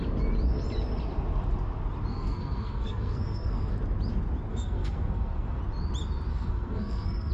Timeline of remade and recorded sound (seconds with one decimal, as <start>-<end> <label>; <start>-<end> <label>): 0.0-2.1 recorded; 2.1-3.7 remade; 3.7-4.5 recorded; 4.5-5.6 remade; 5.6-6.3 recorded; 6.3-7.3 remade